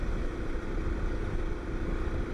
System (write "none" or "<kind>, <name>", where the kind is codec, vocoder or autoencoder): none